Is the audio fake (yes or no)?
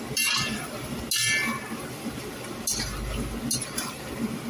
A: no